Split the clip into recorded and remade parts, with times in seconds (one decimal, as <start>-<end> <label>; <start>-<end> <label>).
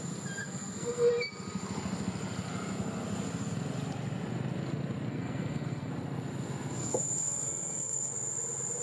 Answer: 0.0-0.4 recorded; 0.4-1.1 remade; 1.1-5.1 recorded; 5.1-5.9 remade; 5.9-6.8 recorded; 6.8-8.1 remade; 8.1-8.8 recorded